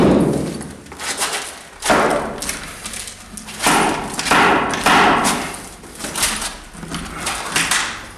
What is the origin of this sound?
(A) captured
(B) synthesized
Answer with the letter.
A